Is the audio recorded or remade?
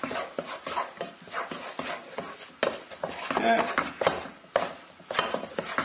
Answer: recorded